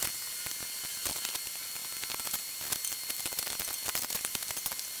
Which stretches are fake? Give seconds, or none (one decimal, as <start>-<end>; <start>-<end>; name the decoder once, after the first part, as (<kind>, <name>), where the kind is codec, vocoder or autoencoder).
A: none